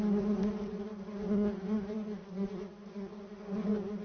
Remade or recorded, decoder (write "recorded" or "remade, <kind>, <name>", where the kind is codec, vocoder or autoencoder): recorded